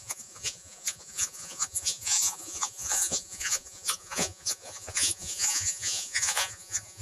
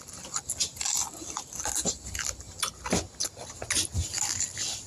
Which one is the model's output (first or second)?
first